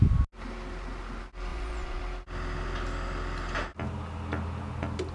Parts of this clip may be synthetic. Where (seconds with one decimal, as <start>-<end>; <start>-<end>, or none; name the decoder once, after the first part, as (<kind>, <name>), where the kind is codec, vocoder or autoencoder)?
1.5-2.0 (vocoder, Vocos)